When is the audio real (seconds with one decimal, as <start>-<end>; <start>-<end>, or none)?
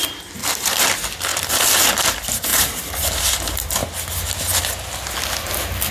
0.0-0.4; 0.9-2.5; 3.3-5.9